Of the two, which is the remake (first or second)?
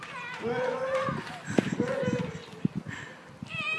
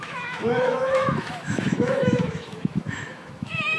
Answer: second